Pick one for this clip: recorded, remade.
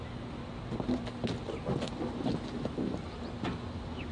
recorded